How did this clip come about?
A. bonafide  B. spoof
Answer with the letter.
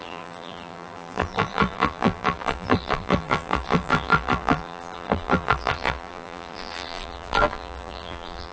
B